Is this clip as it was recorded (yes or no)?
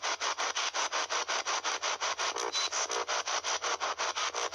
no